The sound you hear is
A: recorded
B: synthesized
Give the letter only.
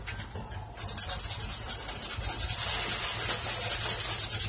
A